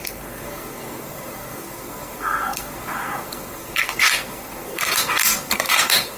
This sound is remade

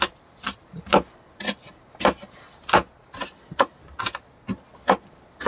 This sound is recorded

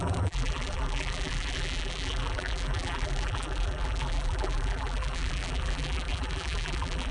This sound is remade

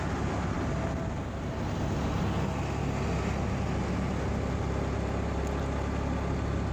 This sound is recorded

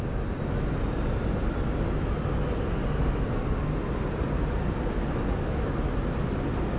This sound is recorded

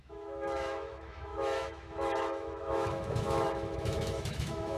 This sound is remade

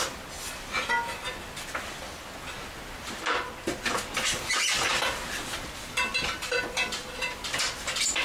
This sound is recorded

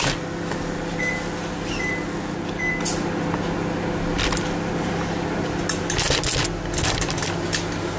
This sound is recorded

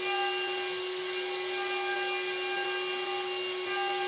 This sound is recorded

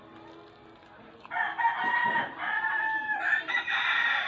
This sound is recorded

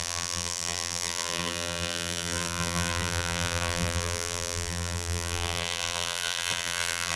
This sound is remade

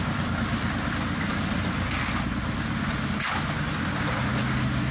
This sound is recorded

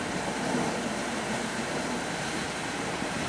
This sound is remade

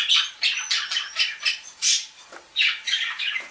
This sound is recorded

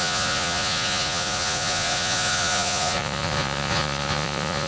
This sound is remade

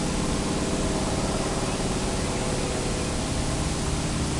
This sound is recorded